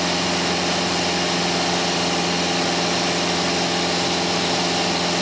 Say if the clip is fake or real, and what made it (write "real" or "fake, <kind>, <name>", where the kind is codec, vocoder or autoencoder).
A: real